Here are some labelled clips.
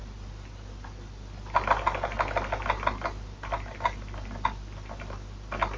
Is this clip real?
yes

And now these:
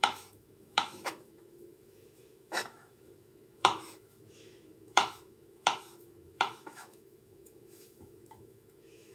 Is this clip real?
no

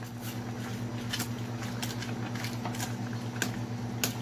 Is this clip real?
yes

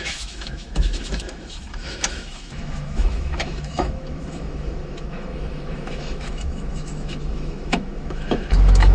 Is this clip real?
no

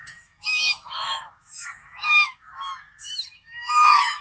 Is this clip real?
no